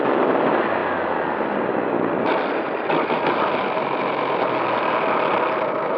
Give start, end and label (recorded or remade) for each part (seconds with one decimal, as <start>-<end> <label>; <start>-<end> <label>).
0.0-6.0 recorded